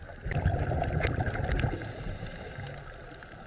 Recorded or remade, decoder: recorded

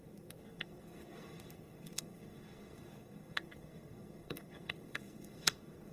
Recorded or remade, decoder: remade, codec, SNAC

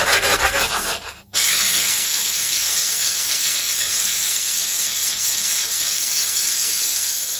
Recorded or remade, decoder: remade, codec, SNAC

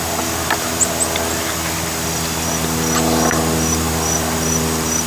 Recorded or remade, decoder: recorded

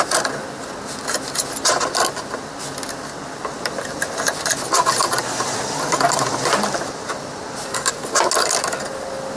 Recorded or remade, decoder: recorded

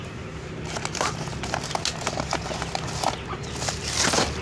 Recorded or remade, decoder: recorded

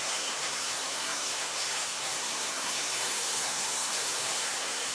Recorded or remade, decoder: remade, codec, SNAC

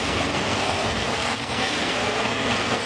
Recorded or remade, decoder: remade, codec, SNAC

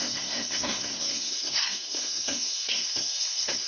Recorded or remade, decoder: remade, codec, SNAC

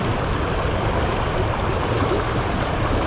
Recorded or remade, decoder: recorded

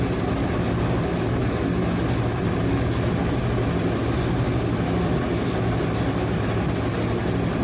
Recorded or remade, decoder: recorded